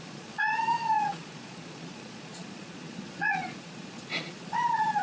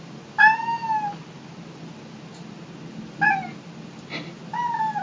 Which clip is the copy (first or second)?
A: first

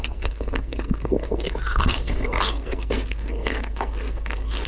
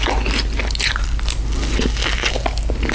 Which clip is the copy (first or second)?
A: first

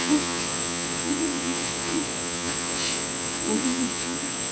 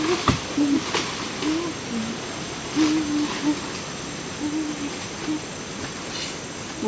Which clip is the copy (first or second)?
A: first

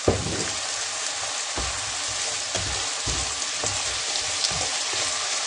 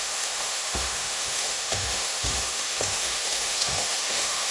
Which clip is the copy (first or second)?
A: second